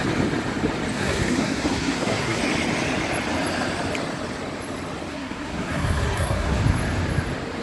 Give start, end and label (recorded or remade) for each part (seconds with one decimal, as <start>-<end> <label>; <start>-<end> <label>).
0.0-0.9 recorded; 0.9-2.4 remade; 2.4-5.1 recorded; 5.1-6.6 remade; 6.6-7.6 recorded